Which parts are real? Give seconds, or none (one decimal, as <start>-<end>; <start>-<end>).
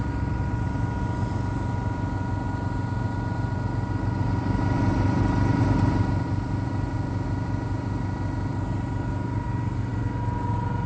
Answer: 0.0-10.9